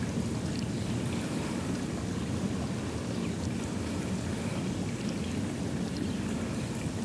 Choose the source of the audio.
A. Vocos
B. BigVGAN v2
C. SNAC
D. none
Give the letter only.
D